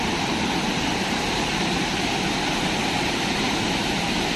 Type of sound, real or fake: real